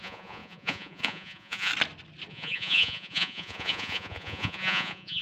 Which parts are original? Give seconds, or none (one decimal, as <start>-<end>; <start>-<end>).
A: 1.7-2.3